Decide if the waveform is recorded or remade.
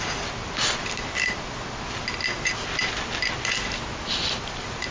recorded